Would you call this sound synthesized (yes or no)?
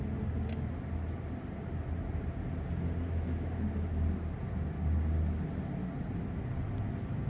no